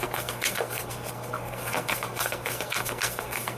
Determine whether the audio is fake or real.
fake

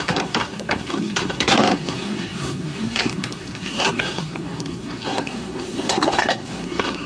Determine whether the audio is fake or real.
fake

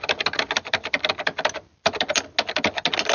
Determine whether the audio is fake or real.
real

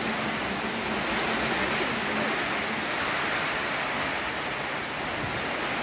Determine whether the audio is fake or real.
real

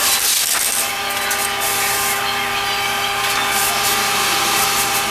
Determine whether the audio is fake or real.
real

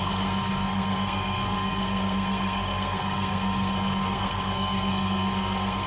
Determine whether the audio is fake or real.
fake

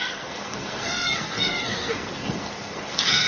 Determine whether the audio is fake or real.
fake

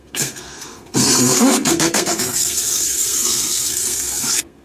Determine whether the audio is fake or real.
fake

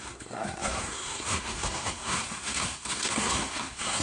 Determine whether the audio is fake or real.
fake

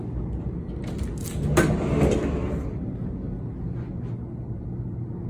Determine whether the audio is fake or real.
real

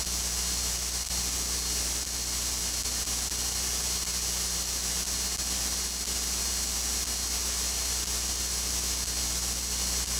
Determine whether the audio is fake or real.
real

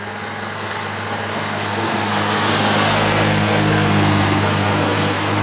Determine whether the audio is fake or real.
fake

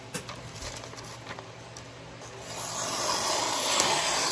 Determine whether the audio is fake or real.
real